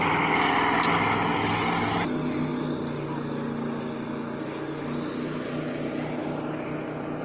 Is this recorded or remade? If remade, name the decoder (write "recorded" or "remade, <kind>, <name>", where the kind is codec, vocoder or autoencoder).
recorded